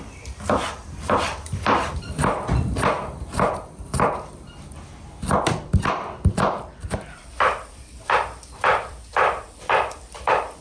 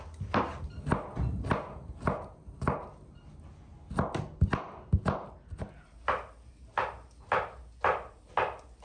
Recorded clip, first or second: second